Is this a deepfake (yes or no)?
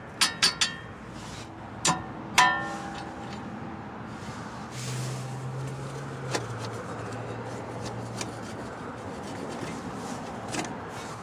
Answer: no